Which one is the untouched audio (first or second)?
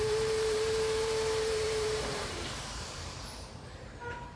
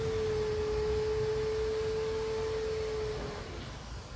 second